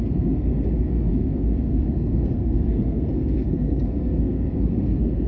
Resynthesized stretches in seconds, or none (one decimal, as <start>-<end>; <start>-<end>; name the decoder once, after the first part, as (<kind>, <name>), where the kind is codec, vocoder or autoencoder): 0.0-5.3 (codec, SNAC)